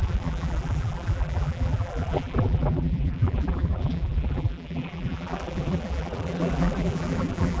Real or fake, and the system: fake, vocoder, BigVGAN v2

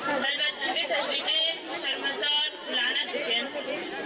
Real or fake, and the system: real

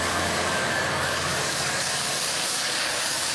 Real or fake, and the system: fake, codec, DAC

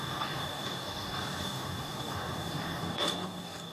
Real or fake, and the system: fake, codec, DAC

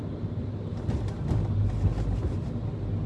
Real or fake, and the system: real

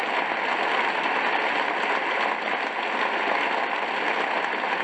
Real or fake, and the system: real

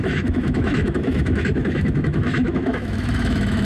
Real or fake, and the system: fake, autoencoder, DAC-VAE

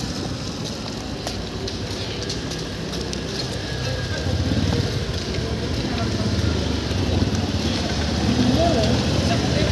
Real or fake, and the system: real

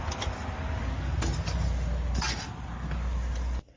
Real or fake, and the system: real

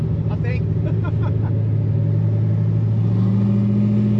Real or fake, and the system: real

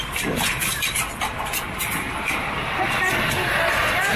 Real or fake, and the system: fake, vocoder, BigVGAN v2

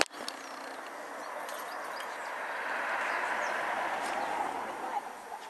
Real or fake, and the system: real